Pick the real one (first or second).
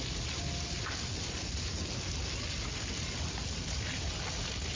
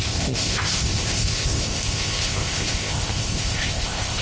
first